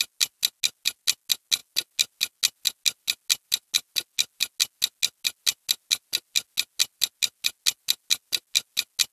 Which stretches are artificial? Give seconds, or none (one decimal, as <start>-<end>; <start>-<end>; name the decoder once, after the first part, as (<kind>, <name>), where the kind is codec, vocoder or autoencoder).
none